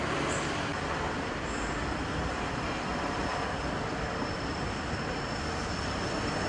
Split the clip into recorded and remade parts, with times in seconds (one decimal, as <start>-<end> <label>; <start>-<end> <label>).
0.0-3.3 recorded; 3.3-5.0 remade; 5.0-6.5 recorded